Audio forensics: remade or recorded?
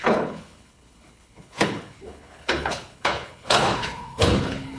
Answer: remade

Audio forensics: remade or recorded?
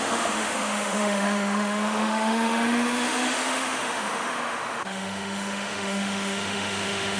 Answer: remade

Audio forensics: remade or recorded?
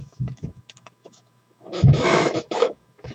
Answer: remade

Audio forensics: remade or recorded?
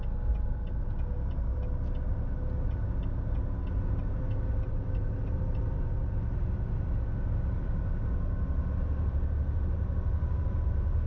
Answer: recorded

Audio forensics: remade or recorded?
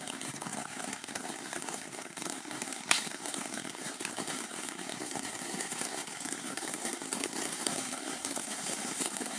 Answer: remade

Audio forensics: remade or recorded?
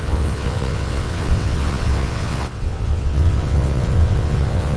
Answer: remade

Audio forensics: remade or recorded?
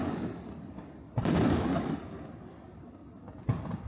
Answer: recorded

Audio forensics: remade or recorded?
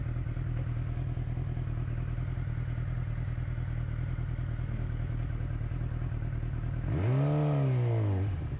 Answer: recorded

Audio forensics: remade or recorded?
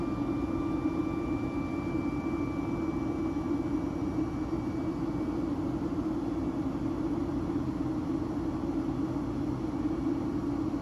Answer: recorded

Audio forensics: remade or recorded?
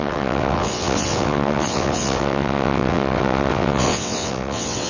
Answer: remade